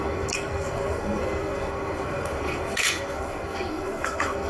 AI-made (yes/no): yes